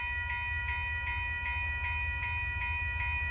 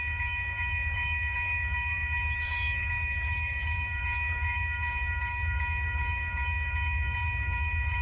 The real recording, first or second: first